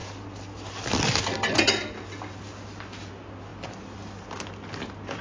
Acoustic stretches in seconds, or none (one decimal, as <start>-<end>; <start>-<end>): 0.0-5.2